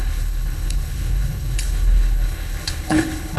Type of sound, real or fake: fake